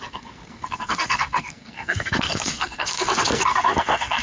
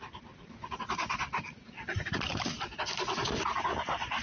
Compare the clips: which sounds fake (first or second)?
first